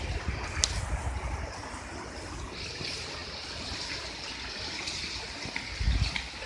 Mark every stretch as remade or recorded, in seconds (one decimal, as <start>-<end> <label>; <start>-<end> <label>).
0.0-6.5 recorded